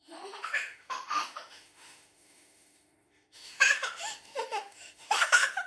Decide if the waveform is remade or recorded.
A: remade